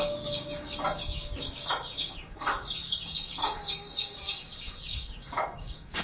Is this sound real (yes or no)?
no